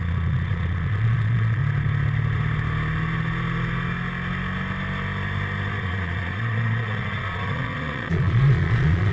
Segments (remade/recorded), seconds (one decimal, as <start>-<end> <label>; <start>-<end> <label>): 0.0-1.6 remade; 1.6-5.8 recorded; 5.8-9.1 remade

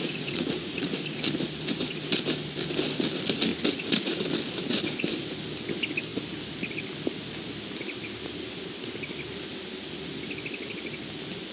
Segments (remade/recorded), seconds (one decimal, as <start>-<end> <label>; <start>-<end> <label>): 0.0-0.9 remade; 0.9-3.5 recorded; 3.5-4.2 remade; 4.2-11.5 recorded

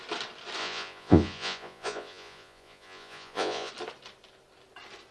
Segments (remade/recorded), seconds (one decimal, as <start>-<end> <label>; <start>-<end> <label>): 0.0-0.6 recorded; 0.6-3.7 remade; 3.7-5.1 recorded